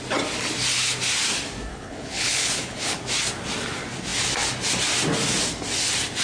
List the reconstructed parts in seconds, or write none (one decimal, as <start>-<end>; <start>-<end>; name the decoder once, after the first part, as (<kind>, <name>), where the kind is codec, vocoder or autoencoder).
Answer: 1.7-3.0 (codec, HILCodec)